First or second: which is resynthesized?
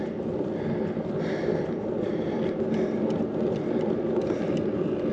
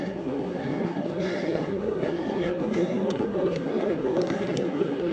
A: second